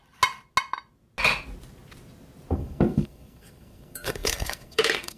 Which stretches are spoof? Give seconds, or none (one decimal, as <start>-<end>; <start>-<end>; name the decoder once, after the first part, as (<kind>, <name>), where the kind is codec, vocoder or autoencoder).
2.5-5.2 (codec, SNAC)